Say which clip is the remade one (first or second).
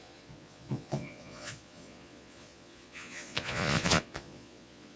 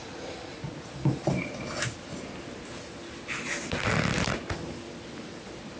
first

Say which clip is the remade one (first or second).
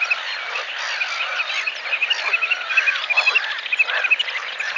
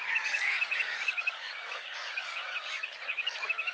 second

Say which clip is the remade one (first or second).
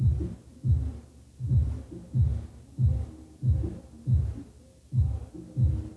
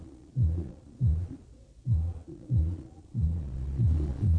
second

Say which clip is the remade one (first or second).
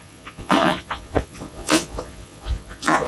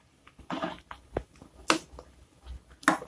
first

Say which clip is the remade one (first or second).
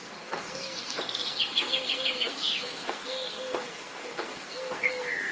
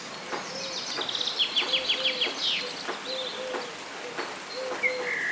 first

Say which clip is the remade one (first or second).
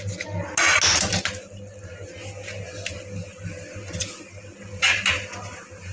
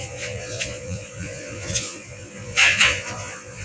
second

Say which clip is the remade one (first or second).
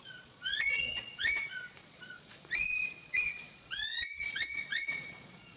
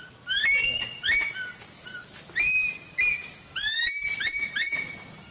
first